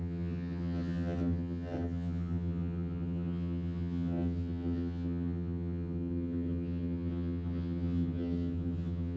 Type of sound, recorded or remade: remade